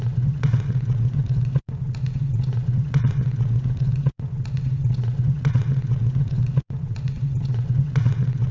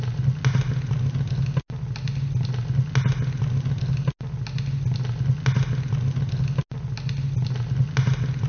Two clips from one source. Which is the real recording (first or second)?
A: second